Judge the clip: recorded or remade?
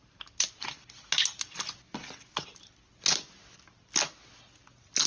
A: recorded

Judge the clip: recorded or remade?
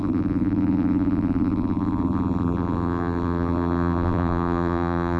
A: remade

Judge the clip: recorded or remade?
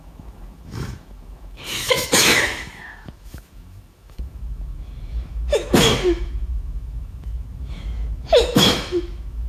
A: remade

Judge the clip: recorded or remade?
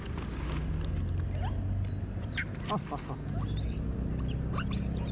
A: recorded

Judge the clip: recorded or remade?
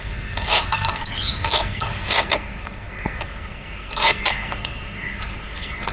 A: remade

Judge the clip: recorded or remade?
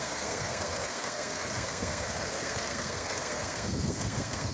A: remade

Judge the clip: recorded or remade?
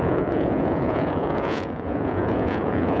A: remade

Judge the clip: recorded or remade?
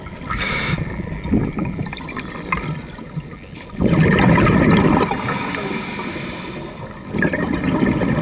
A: recorded